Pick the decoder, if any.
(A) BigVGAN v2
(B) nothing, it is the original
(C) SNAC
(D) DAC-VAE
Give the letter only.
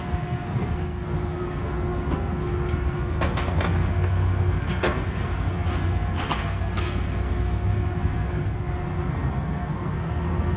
C